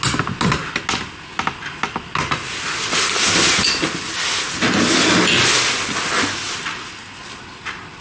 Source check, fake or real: real